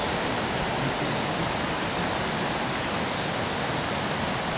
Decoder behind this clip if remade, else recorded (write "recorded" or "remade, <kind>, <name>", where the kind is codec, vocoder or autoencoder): recorded